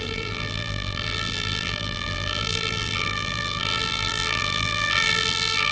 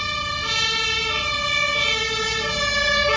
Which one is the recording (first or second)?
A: second